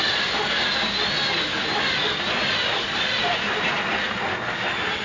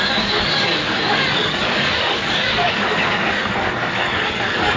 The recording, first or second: first